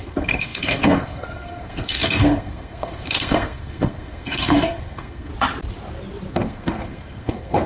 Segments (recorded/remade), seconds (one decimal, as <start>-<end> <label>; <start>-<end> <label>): 0.0-5.3 remade; 5.3-6.3 recorded; 6.3-7.7 remade